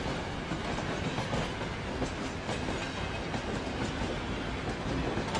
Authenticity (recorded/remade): recorded